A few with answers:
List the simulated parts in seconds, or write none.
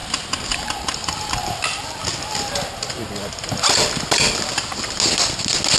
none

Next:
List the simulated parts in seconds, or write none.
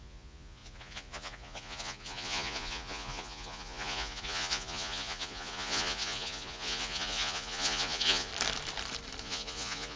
0.0-8.3 (vocoder, Vocos); 9.2-10.0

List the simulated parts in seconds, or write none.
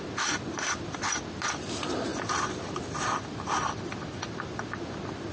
none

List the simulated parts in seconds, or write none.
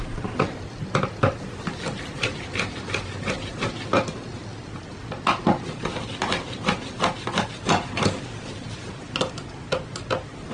none